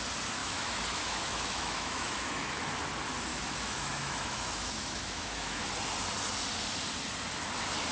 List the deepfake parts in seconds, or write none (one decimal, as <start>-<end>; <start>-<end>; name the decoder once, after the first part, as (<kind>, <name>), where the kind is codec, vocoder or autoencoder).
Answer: 0.4-2.7 (autoencoder, DAC-VAE); 3.3-5.6